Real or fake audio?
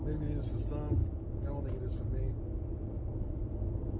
real